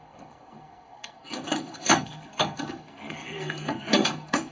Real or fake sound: fake